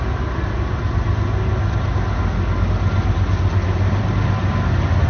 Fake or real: real